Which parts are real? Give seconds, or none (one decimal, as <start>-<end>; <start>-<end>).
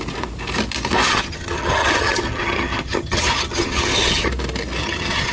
0.0-1.1; 4.3-4.8